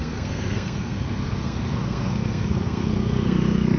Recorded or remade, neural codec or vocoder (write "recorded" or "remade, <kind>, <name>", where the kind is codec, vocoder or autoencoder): remade, codec, SNAC